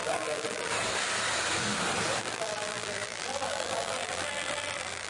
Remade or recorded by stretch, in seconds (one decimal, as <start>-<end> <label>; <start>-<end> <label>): 0.0-0.7 remade; 0.7-2.2 recorded; 2.2-5.1 remade